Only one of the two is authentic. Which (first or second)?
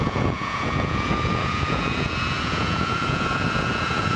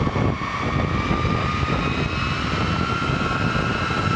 second